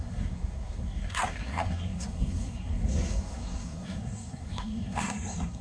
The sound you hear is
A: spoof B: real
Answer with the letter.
A